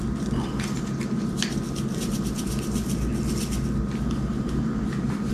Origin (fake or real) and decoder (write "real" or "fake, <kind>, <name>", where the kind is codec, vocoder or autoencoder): real